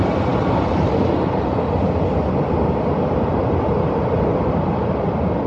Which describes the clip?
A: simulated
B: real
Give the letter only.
B